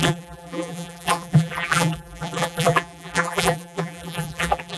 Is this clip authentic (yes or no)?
no